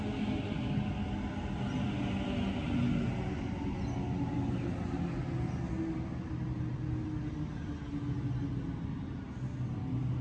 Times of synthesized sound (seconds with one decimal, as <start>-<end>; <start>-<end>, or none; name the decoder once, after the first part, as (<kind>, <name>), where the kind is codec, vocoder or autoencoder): none